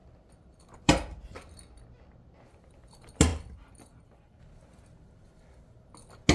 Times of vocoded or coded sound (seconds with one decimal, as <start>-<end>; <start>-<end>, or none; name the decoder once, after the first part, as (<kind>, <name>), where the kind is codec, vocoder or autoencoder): 0.0-1.2 (vocoder, BigVGAN v2)

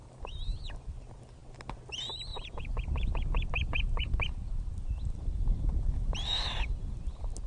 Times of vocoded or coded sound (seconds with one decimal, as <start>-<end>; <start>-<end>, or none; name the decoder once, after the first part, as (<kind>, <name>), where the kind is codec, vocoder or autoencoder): 0.0-0.9 (vocoder, BigVGAN v2); 2.3-6.8

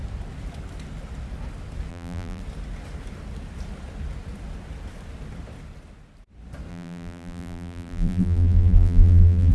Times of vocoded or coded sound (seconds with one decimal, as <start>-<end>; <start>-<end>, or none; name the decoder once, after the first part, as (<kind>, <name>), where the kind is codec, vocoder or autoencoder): 1.9-2.4 (vocoder, BigVGAN v2); 6.7-9.5

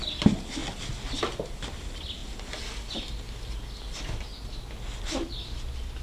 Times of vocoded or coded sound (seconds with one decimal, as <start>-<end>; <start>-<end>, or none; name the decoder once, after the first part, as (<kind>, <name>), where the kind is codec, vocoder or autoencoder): none

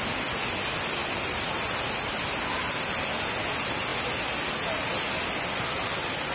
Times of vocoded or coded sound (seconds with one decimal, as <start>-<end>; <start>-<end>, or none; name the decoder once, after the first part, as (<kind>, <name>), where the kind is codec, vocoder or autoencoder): 1.0-2.1 (vocoder, BigVGAN v2)